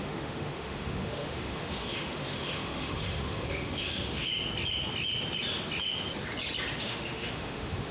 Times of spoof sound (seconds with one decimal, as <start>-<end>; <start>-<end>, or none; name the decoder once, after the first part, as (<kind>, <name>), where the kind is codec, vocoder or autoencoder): 0.0-4.3 (autoencoder, DAC-VAE); 6.8-7.9